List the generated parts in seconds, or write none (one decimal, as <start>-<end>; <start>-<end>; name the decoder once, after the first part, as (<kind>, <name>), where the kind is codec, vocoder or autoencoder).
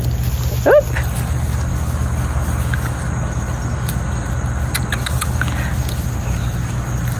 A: none